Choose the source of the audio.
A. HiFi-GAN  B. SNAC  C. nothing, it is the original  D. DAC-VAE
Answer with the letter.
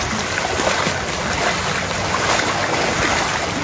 C